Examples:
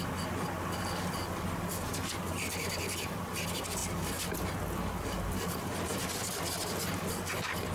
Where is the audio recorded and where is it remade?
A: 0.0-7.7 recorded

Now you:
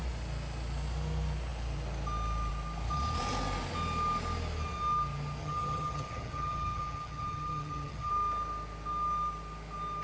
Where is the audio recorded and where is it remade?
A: 0.0-5.4 recorded; 5.4-8.1 remade; 8.1-10.0 recorded

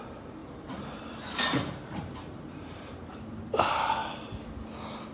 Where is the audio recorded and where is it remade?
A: 0.0-0.4 recorded; 0.4-3.5 remade; 3.5-5.1 recorded

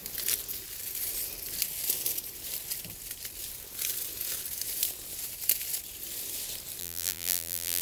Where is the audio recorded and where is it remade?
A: 0.0-6.8 recorded; 6.8-7.8 remade

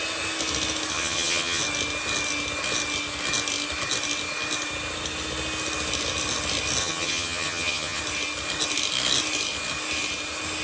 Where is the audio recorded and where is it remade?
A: 0.0-0.9 recorded; 0.9-1.6 remade; 1.6-6.8 recorded; 6.8-8.0 remade; 8.0-10.6 recorded

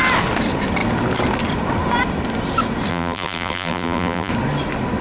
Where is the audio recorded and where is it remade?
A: 0.0-2.9 recorded; 2.9-4.3 remade; 4.3-5.0 recorded

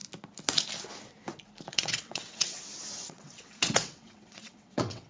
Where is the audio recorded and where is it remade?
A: 0.0-1.7 recorded; 1.7-2.6 remade; 2.6-3.0 recorded; 3.0-5.1 remade